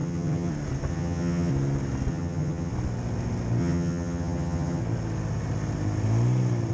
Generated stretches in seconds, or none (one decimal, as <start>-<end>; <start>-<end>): 0.0-0.5; 0.9-1.5; 2.1-2.7; 3.6-4.8